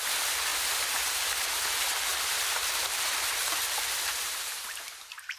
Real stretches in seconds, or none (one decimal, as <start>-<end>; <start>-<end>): 0.0-2.1